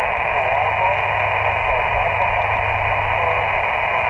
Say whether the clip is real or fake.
real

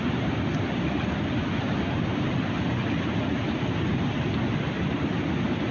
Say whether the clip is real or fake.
real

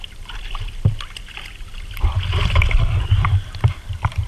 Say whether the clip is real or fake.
real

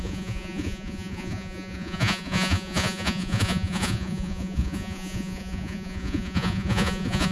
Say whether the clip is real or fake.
fake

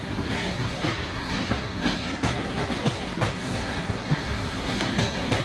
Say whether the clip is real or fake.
fake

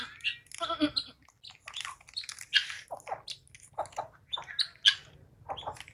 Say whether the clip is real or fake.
real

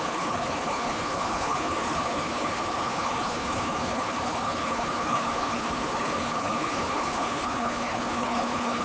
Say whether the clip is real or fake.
fake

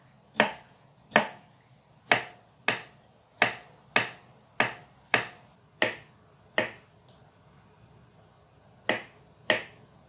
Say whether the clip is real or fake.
real